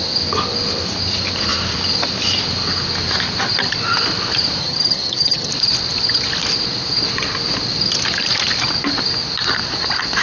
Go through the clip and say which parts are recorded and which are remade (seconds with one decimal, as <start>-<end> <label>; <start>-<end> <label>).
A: 0.0-4.6 recorded; 4.6-5.5 remade; 5.5-10.2 recorded